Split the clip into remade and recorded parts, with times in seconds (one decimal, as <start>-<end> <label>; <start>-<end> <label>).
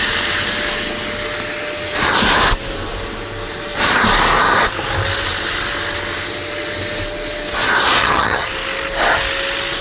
0.0-8.0 recorded; 8.0-8.5 remade; 8.5-9.8 recorded